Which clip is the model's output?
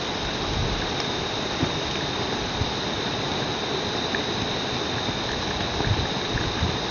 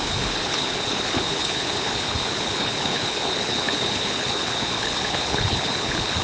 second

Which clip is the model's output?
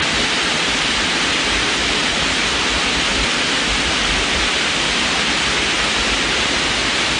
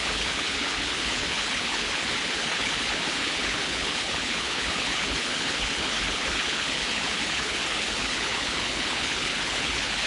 second